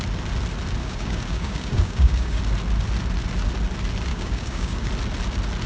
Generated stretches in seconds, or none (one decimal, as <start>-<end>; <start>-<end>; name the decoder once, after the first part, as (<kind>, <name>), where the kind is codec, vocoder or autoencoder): 0.8-2.4 (codec, DAC); 4.1-4.9